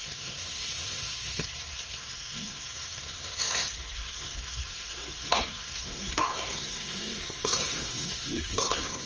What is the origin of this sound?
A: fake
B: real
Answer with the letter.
A